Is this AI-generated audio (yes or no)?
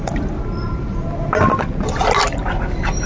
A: no